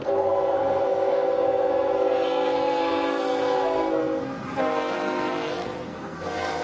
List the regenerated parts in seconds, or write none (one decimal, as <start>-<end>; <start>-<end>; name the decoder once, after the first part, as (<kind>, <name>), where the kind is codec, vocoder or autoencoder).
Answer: 0.0-6.6 (codec, SNAC)

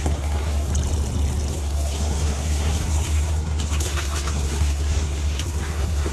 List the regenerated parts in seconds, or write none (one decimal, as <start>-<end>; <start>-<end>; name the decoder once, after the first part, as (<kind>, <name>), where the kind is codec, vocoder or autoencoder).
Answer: 0.0-0.7 (codec, SNAC); 1.5-6.1

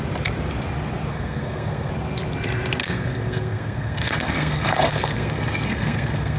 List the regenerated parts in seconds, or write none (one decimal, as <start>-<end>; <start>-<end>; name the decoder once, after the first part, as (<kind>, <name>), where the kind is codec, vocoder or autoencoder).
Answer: 1.1-1.9 (codec, SNAC); 2.8-6.4

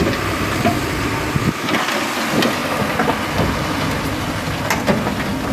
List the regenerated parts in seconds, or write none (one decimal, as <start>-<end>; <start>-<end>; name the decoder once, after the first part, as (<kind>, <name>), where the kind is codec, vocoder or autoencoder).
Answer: none

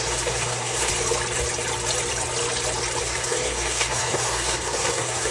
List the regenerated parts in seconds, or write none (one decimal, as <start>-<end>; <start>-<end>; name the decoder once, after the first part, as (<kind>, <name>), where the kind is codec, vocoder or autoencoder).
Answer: 0.0-0.9 (codec, SNAC); 3.0-5.3

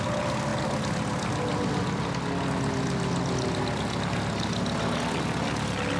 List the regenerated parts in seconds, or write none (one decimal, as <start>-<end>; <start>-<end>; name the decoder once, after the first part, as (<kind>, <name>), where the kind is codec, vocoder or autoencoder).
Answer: none